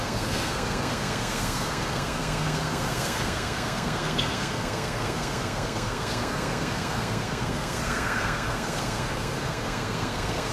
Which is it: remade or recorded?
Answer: remade